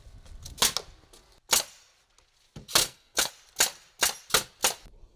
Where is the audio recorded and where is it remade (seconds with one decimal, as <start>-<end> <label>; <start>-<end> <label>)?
0.0-2.8 recorded; 2.8-3.3 remade; 3.3-5.2 recorded